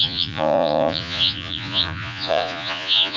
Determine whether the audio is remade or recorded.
remade